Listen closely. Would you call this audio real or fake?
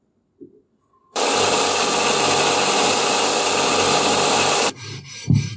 real